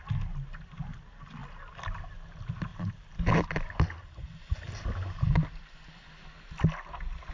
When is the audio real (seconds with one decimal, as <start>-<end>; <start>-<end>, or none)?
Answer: 0.0-7.3

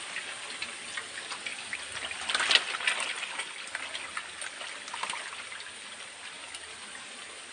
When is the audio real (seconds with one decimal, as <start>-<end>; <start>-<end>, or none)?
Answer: 0.0-7.5

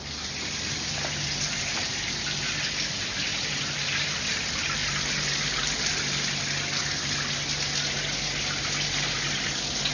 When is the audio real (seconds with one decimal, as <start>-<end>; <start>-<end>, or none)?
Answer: 0.0-9.9

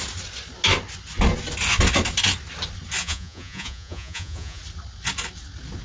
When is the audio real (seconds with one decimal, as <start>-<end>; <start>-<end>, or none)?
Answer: 0.0-3.0; 4.6-5.8

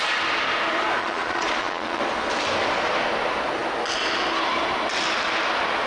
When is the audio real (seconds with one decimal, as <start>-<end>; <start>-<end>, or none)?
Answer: 0.0-1.0; 2.0-5.9

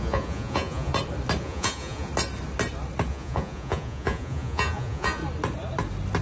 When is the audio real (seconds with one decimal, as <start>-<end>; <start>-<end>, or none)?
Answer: 0.9-1.4; 2.1-3.1; 5.2-6.2